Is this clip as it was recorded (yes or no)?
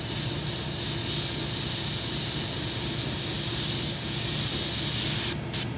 yes